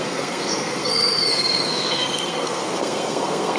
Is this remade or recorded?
remade